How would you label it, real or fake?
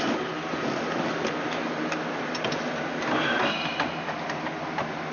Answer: real